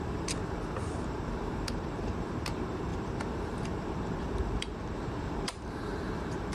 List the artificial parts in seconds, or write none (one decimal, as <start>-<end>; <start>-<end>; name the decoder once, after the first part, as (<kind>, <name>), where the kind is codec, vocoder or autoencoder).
0.0-6.5 (vocoder, BigVGAN v2)